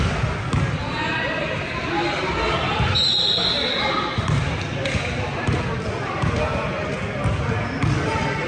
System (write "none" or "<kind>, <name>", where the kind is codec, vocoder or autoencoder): none